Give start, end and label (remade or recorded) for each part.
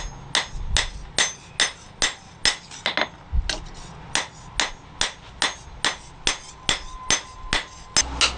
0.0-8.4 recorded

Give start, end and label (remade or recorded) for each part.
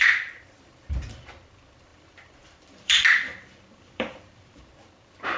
0.0-1.9 recorded; 1.9-4.6 remade; 4.6-5.4 recorded